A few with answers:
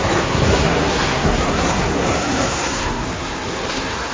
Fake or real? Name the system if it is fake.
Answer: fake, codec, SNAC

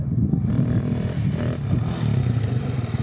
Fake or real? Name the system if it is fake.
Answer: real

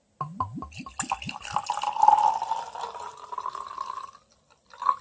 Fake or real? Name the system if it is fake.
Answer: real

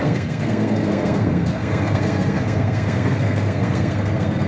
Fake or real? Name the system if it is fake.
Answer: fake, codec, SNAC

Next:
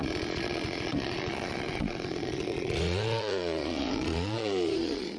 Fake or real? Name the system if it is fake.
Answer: fake, vocoder, Vocos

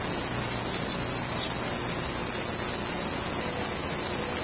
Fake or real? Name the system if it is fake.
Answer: real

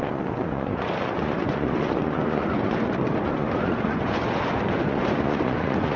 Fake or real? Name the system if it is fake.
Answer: fake, vocoder, Vocos